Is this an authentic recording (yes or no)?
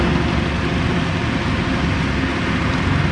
yes